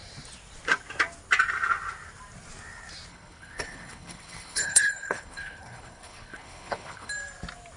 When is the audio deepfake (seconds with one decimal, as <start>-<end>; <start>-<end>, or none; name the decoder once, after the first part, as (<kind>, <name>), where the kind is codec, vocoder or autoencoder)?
3.1-7.1 (codec, HILCodec)